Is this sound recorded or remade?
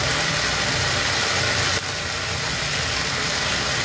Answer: recorded